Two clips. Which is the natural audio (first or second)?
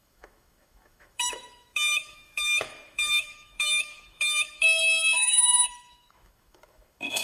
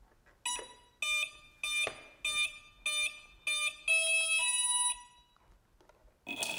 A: second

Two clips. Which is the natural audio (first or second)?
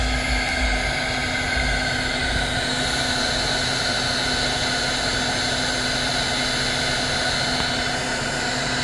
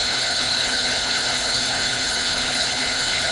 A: first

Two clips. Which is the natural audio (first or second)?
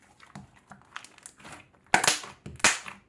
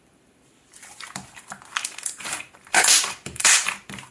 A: first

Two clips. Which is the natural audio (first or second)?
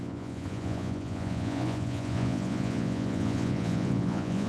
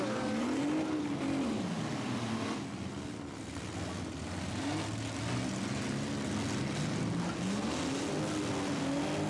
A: second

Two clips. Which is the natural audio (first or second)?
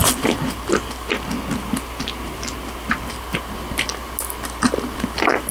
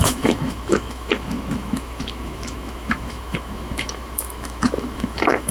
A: first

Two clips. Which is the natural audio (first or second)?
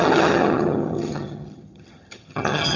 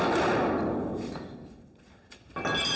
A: second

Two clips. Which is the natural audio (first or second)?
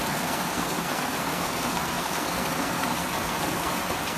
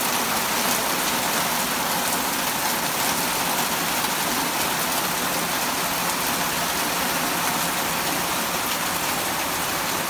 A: second